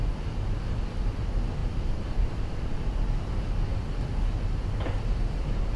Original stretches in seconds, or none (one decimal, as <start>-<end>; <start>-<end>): 0.0-1.6; 2.9-5.8